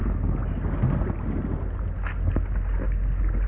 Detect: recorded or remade recorded